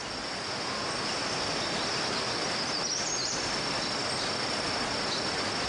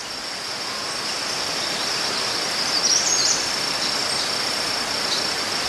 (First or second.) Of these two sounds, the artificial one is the second